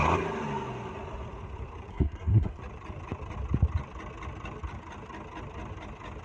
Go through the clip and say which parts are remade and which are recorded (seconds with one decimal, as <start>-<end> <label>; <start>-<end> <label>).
0.0-1.9 recorded; 1.9-2.6 remade; 2.6-6.2 recorded